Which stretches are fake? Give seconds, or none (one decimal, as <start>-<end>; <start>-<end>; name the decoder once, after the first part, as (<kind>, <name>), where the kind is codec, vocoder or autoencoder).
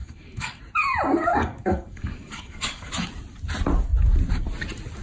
0.0-0.6 (codec, DAC); 1.3-2.9